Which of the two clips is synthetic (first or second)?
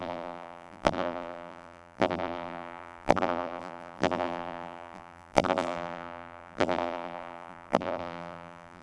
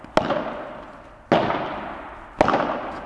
first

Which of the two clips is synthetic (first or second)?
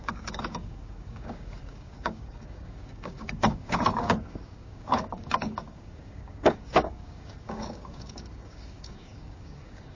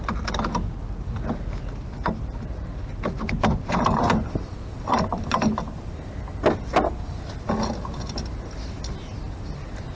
first